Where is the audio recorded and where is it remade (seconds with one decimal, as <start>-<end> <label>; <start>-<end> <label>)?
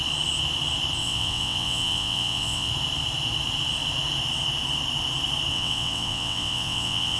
0.0-1.0 recorded; 1.0-2.7 remade; 2.7-5.5 recorded; 5.5-7.2 remade